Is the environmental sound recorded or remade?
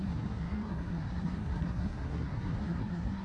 remade